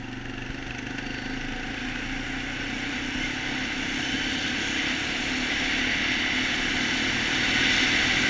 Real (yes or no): yes